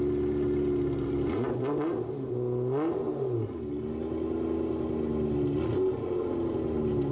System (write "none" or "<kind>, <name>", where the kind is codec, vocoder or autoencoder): none